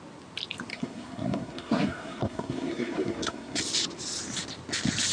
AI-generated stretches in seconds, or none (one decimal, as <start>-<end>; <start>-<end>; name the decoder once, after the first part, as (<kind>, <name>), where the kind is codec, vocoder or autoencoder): 0.7-3.6 (codec, SNAC)